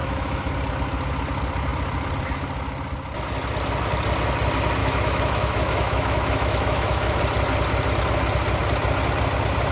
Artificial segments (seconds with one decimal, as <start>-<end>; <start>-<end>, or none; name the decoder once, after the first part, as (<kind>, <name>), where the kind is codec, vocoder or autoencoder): 0.0-0.5 (autoencoder, DAC-VAE); 4.8-7.2